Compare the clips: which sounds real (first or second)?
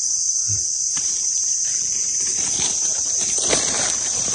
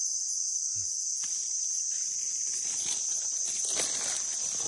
second